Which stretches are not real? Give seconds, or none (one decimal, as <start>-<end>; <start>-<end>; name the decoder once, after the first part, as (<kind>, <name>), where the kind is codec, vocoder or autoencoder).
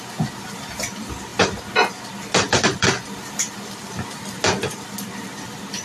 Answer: none